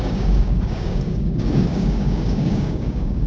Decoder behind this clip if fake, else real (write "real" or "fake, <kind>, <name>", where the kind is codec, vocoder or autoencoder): fake, codec, DAC